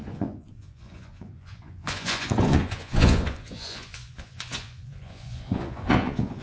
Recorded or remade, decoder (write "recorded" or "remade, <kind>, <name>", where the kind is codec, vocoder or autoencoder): remade, vocoder, Vocos